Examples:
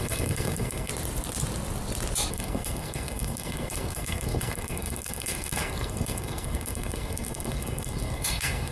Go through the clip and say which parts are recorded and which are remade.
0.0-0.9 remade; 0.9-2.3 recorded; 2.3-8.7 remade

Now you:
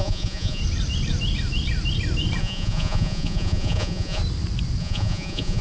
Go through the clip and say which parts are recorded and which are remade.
0.0-0.6 remade; 0.6-2.4 recorded; 2.4-4.2 remade; 4.2-4.8 recorded; 4.8-5.6 remade

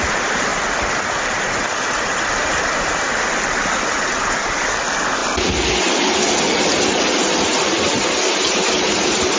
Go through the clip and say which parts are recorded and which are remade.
0.0-9.4 recorded

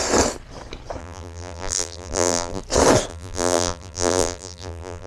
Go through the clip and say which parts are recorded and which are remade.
0.0-1.0 recorded; 1.0-2.6 remade; 2.6-3.1 recorded; 3.1-5.1 remade